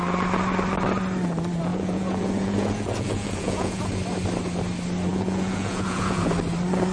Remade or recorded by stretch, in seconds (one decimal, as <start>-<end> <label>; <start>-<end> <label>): 0.0-1.7 recorded; 1.7-3.8 remade; 3.8-5.1 recorded; 5.1-6.3 remade; 6.3-6.9 recorded

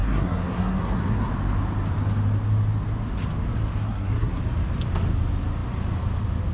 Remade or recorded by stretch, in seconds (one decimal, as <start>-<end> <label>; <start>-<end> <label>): 0.0-1.3 remade; 1.3-3.8 recorded; 3.8-4.4 remade; 4.4-6.5 recorded

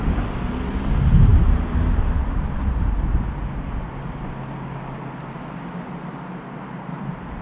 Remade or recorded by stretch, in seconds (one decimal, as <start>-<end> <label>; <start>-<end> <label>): 0.0-7.4 recorded

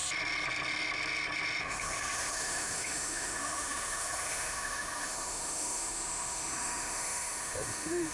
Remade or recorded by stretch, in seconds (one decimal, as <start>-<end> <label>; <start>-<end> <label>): 0.0-1.6 recorded; 1.6-8.1 remade

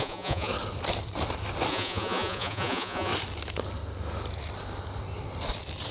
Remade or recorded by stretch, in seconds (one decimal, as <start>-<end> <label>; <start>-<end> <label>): 0.0-0.5 remade; 0.5-1.7 recorded; 1.7-3.1 remade; 3.1-5.9 recorded